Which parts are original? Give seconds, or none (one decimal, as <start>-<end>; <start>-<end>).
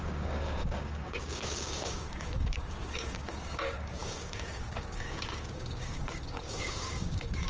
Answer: none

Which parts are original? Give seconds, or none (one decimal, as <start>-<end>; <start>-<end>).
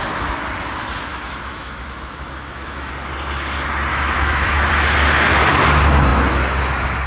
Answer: 0.0-1.1; 2.9-3.9; 4.7-7.1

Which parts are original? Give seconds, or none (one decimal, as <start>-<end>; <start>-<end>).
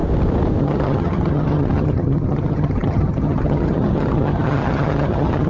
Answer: 0.0-0.6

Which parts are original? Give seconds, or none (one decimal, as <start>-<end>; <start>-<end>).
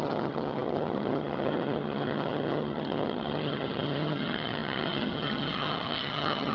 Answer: none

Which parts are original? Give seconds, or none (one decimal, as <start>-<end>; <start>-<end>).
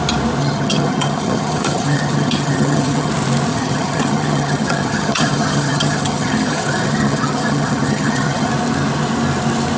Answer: 0.0-0.4; 3.1-3.5; 8.5-9.8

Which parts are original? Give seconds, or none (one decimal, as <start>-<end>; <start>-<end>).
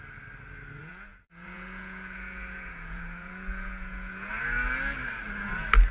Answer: 0.0-0.8; 4.3-5.9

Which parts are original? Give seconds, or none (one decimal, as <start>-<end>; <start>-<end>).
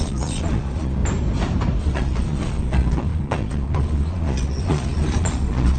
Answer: 1.0-1.8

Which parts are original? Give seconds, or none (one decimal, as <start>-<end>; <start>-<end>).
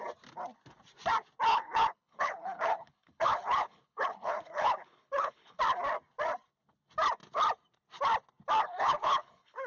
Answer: 0.0-1.5; 5.6-8.6